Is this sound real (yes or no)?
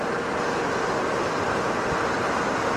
no